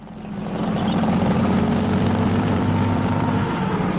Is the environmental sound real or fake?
fake